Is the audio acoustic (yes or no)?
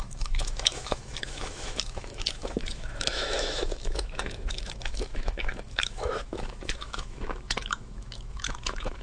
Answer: no